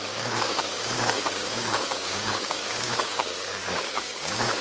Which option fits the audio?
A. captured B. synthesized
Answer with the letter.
B